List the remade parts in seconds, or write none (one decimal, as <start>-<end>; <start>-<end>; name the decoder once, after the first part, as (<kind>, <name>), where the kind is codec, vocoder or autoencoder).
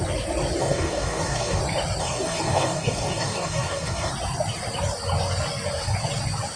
0.6-1.6 (codec, DAC); 2.0-4.1